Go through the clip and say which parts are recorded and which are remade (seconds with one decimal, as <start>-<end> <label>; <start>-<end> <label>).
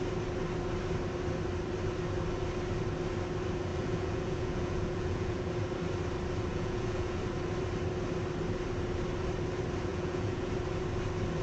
0.0-3.7 recorded; 3.7-5.5 remade; 5.5-6.5 recorded; 6.5-7.2 remade; 7.2-9.9 recorded; 9.9-10.5 remade; 10.5-11.4 recorded